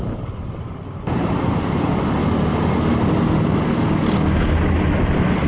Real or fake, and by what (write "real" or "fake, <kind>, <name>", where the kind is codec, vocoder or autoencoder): real